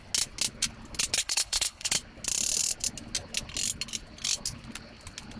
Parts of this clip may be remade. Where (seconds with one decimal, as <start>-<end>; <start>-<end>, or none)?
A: 1.2-1.9